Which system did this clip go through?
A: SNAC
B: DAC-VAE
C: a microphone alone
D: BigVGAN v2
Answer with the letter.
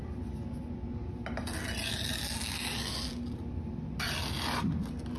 C